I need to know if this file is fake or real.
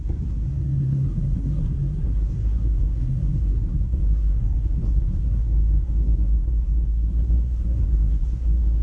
fake